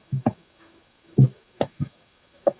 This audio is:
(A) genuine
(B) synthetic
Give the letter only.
B